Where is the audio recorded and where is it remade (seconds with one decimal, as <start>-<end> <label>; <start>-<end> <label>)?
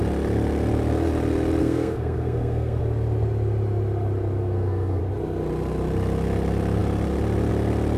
0.0-1.6 recorded; 1.6-2.8 remade; 2.8-4.4 recorded; 4.4-5.0 remade; 5.0-8.0 recorded